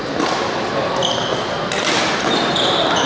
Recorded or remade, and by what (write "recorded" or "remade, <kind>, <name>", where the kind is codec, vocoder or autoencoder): recorded